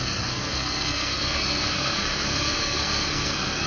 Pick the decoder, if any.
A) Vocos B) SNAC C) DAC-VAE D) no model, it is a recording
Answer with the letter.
B